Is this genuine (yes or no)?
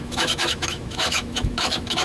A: no